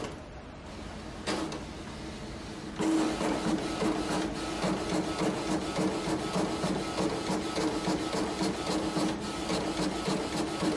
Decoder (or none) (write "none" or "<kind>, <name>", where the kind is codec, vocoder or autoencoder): none